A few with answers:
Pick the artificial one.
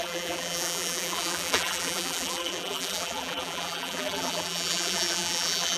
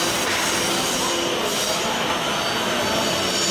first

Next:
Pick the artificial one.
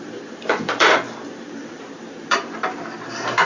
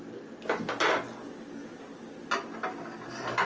first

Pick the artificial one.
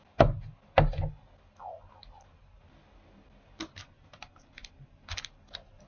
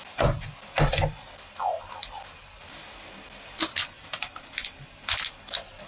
second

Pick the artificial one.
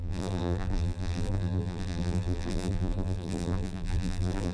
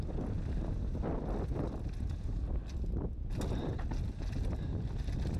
first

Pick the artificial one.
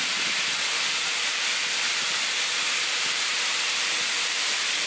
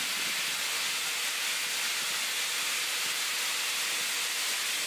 first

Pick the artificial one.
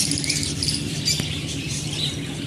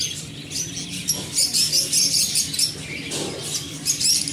first